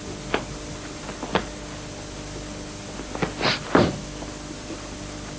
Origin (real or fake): real